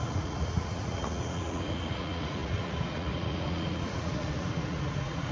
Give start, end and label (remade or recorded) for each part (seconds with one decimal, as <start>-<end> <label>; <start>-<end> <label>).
0.0-5.3 remade